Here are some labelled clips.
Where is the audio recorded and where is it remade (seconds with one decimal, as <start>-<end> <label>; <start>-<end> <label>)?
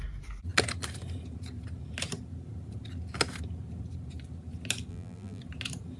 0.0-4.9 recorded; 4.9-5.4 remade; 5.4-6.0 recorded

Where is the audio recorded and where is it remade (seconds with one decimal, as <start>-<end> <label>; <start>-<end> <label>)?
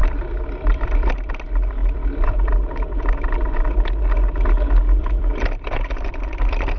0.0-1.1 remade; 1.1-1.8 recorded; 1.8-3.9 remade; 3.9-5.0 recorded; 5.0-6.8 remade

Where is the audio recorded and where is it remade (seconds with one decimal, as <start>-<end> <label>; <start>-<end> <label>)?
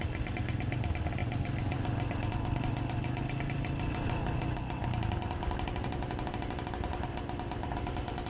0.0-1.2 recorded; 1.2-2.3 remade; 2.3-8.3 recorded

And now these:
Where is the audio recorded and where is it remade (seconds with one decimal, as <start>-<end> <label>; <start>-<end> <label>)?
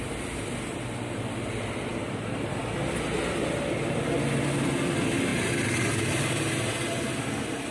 0.0-1.9 recorded; 1.9-2.6 remade; 2.6-7.7 recorded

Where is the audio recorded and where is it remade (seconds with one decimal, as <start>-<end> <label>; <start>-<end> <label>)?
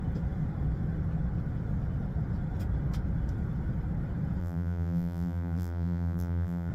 0.0-4.4 recorded; 4.4-6.7 remade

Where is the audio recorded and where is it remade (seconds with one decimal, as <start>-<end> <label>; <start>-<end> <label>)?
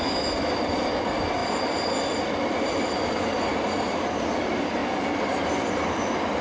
0.0-6.4 recorded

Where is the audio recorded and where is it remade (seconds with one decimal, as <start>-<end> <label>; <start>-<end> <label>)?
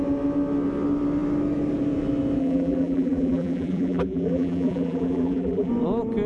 0.0-2.4 recorded; 2.4-5.7 remade; 5.7-6.3 recorded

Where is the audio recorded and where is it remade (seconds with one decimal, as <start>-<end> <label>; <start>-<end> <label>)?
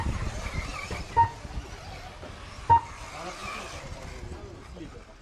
0.0-5.2 recorded